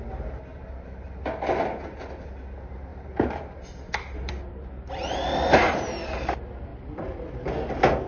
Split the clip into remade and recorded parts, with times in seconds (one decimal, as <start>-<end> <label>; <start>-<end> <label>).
0.0-0.5 recorded; 0.5-1.2 remade; 1.2-2.9 recorded; 2.9-4.3 remade; 4.3-8.1 recorded